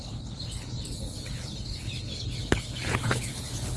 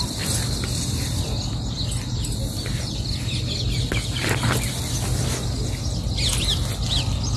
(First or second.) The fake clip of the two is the first